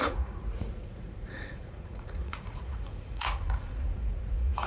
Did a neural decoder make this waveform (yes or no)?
yes